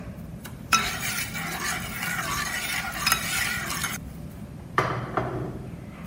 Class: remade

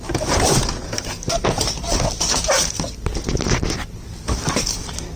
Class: recorded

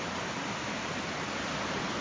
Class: recorded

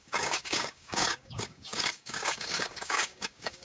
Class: remade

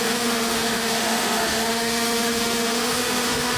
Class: remade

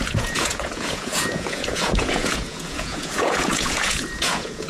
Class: remade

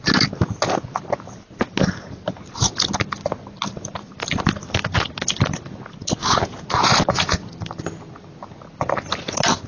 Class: recorded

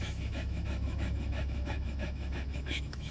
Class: remade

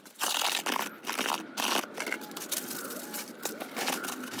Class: recorded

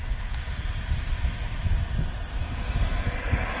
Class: recorded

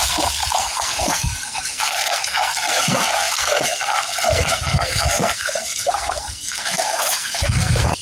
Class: remade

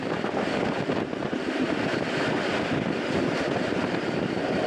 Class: remade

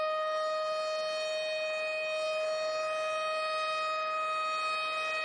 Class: recorded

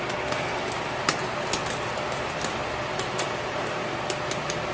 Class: recorded